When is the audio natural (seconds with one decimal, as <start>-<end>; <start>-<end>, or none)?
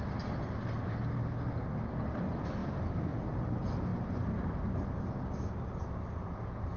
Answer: 0.0-3.9; 5.2-6.8